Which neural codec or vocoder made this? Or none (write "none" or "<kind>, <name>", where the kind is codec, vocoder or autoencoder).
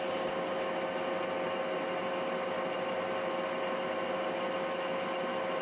none